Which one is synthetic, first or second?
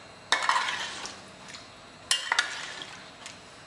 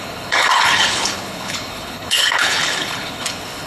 second